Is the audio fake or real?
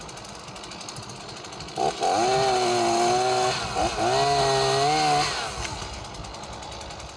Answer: real